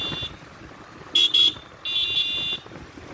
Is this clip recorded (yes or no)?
yes